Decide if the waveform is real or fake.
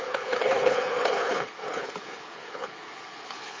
fake